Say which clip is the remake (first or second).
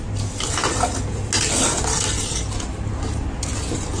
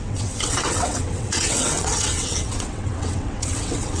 second